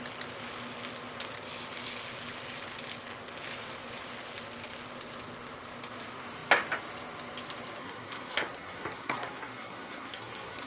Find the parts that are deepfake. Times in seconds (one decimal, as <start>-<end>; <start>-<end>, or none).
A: 7.8-10.7